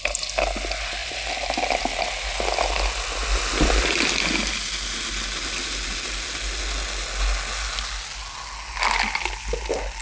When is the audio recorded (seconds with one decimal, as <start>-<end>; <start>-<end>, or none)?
0.0-10.0